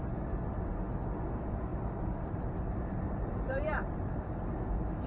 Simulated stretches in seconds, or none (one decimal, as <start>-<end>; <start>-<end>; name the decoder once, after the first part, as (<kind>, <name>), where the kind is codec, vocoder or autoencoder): 1.7-4.1 (vocoder, BigVGAN v2)